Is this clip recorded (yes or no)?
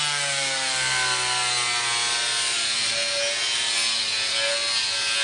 yes